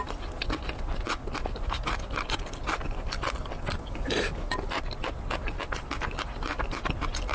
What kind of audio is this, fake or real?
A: real